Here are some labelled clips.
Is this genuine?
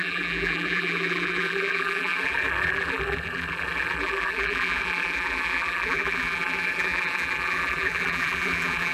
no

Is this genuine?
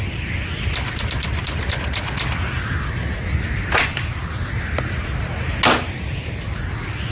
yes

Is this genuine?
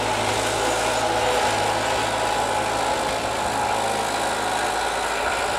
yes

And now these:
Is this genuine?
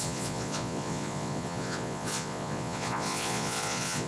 no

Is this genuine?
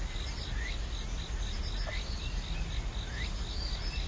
yes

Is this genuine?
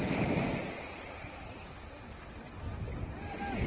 yes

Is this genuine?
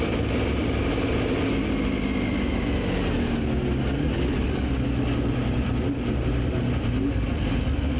yes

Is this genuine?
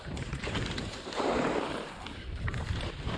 no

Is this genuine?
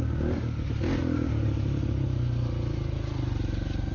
yes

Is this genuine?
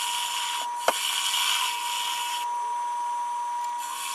yes